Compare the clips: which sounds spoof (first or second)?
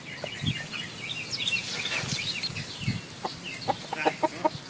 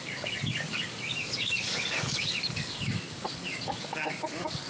second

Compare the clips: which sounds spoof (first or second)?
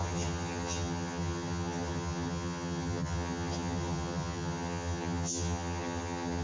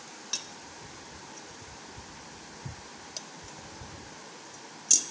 first